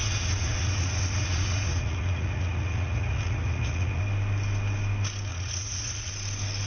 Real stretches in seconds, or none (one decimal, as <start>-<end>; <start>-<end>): 4.0-5.3; 6.1-6.7

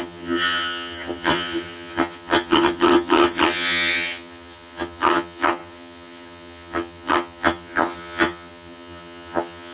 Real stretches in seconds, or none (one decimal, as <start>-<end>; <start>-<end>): none

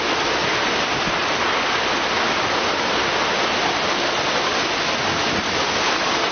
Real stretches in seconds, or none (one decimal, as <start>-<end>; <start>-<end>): 0.0-6.3

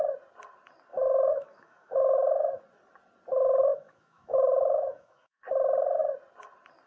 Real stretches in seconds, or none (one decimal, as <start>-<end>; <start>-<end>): 0.0-0.9; 2.6-3.6; 5.4-6.9

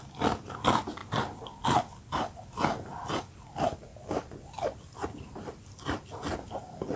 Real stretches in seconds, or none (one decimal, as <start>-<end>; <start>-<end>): 0.0-3.9; 6.6-7.0

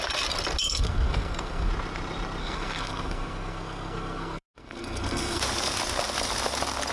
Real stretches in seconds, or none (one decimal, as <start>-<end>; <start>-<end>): 0.0-0.6; 1.7-2.4; 5.4-6.9

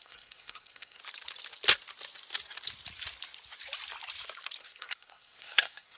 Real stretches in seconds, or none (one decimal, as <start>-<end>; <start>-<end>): 1.0-4.6

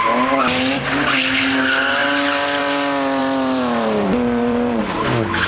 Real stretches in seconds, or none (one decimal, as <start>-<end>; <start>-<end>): 0.0-3.2; 4.8-5.5